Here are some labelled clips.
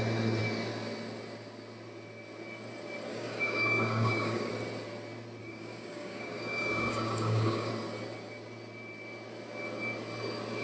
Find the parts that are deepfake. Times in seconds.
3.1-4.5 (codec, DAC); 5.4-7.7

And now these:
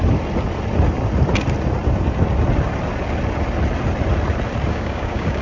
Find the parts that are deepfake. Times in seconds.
4.7-5.4 (codec, DAC)

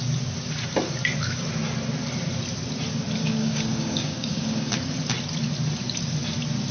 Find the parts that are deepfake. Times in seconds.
3.2-4.7 (codec, DAC)

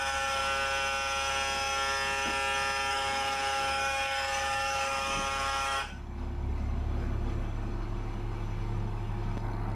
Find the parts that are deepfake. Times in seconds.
0.0-0.4 (codec, DAC); 2.9-9.8

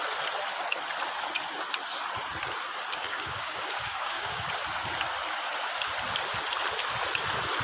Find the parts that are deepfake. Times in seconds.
3.0-4.5 (codec, DAC)